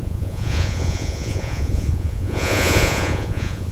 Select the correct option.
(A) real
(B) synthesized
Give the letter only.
B